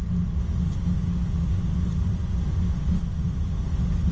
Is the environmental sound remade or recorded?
recorded